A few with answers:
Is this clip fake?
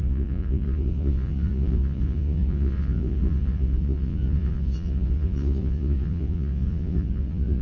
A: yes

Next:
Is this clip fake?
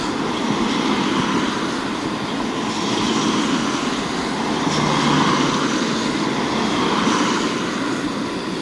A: no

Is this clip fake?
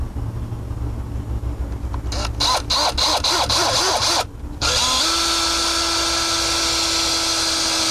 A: no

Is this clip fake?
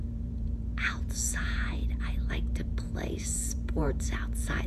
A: yes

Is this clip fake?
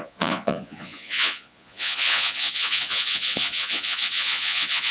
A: yes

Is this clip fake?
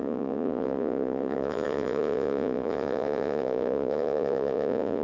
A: yes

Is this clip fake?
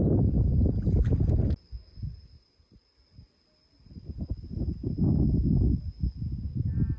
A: no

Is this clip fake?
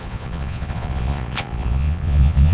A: yes